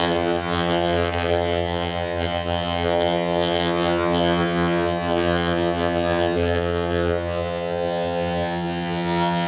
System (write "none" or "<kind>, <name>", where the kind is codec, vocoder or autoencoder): vocoder, HiFi-GAN